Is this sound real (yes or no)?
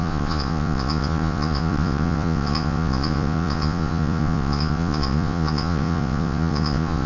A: no